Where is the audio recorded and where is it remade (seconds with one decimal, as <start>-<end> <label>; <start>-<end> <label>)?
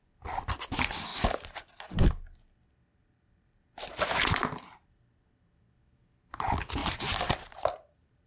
0.0-1.1 recorded; 1.1-1.6 remade; 1.6-3.0 recorded; 3.0-5.2 remade; 5.2-6.8 recorded; 6.8-8.3 remade